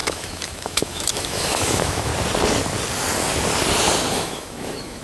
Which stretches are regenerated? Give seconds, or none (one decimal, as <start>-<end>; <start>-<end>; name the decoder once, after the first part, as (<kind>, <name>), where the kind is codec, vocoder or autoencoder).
0.0-2.1 (autoencoder, DAC-VAE); 4.1-5.0